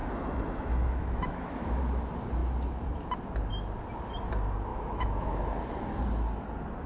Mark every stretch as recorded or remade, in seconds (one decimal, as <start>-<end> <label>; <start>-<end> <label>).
0.0-1.8 remade; 1.8-4.7 recorded; 4.7-5.6 remade; 5.6-6.9 recorded